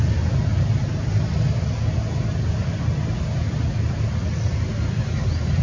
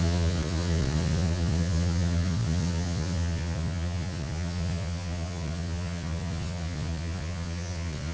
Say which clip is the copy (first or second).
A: second